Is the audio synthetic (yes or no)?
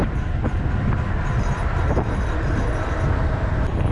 no